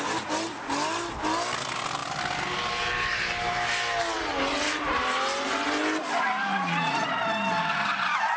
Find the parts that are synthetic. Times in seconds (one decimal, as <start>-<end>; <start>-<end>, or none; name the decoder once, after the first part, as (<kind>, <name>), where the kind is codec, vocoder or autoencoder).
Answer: 6.5-7.2 (vocoder, Vocos)